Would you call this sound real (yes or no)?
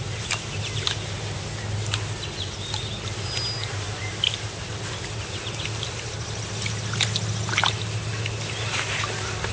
yes